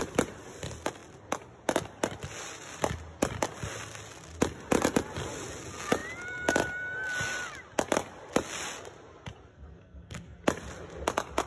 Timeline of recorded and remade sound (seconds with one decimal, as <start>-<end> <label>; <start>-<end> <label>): 0.0-9.5 recorded; 9.5-10.4 remade; 10.4-11.5 recorded